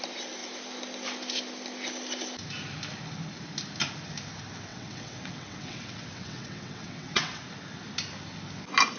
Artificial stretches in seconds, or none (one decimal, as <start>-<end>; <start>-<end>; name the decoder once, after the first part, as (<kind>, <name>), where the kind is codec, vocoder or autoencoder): 4.7-7.4 (vocoder, WaveNeXt)